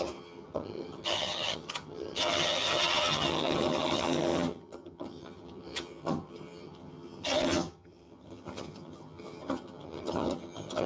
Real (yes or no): no